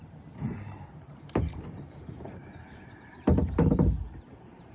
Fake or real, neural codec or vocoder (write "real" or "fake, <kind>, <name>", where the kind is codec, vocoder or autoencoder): fake, vocoder, BigVGAN v2